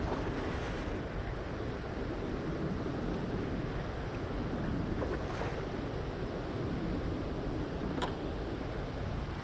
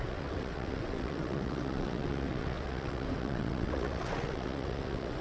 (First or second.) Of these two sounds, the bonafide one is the first